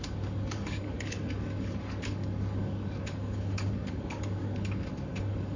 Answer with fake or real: fake